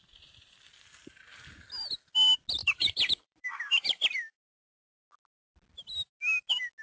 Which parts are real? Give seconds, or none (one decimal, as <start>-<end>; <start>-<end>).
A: 0.0-2.6; 4.5-6.8